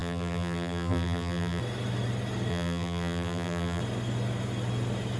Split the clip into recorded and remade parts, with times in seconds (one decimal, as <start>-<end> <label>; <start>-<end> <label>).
0.0-1.6 remade; 1.6-2.5 recorded; 2.5-3.8 remade; 3.8-5.2 recorded